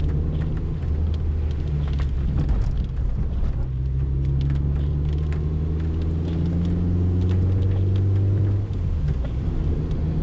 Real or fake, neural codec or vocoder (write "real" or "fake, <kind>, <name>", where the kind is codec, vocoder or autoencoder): real